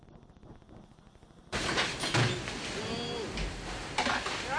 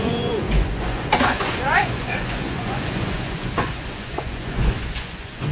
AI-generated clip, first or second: second